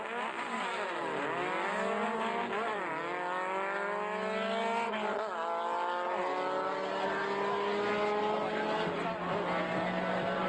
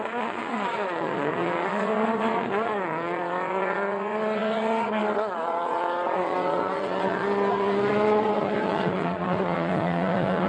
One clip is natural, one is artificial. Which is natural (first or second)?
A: first